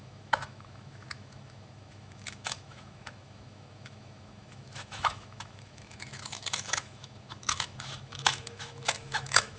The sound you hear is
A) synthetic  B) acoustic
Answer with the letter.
A